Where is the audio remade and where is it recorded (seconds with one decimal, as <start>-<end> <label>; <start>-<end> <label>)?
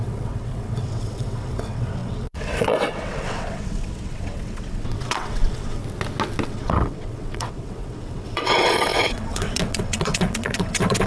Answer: 0.0-5.8 remade; 5.8-6.5 recorded; 6.5-11.1 remade